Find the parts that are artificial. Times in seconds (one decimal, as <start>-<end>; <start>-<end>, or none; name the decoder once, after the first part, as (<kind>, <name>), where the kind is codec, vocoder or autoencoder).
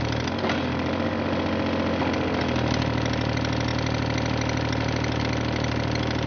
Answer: none